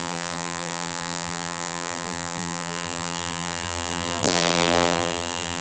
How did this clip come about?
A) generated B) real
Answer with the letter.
A